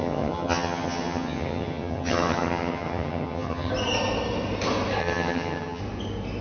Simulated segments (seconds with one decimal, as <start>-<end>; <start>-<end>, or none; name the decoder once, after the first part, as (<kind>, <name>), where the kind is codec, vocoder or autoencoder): 0.0-3.7 (vocoder, HiFi-GAN); 5.0-5.8